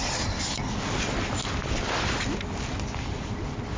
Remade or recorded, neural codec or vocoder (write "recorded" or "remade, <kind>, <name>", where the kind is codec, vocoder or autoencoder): recorded